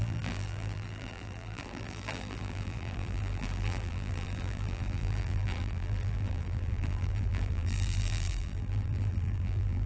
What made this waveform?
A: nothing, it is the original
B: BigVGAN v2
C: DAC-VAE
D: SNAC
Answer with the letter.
B